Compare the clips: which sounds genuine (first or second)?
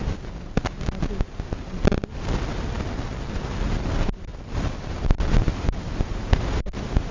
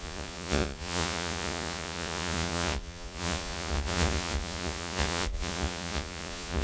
first